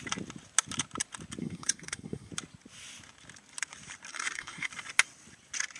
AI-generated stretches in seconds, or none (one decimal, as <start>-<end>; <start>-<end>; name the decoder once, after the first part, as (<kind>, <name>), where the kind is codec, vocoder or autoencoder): 1.4-2.3 (codec, SNAC); 4.1-4.7